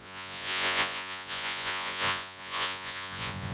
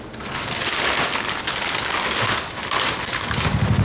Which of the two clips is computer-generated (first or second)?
first